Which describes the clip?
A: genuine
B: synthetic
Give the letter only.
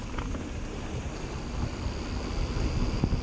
A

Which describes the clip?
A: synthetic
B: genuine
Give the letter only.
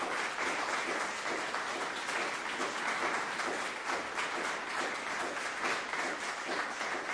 B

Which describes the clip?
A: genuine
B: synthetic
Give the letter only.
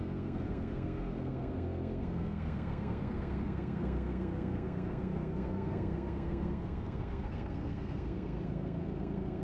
B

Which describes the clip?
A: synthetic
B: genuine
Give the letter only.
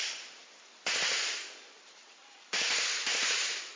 B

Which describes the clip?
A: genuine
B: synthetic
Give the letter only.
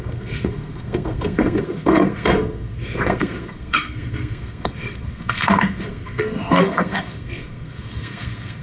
B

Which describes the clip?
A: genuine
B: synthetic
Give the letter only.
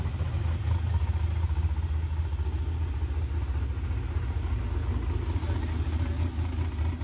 A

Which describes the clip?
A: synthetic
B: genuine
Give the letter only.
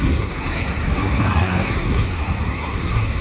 A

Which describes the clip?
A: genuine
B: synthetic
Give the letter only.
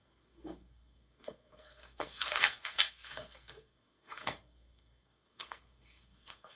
B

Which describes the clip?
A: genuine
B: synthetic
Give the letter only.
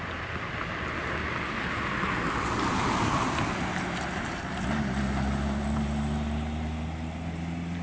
A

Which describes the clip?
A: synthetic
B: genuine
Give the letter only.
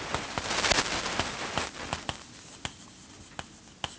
B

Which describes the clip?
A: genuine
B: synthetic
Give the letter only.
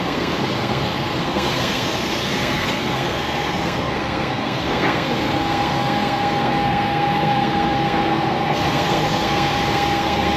B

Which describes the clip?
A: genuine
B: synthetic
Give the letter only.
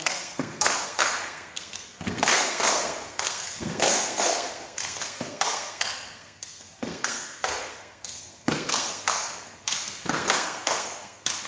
B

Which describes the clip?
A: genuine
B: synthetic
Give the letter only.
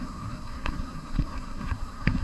B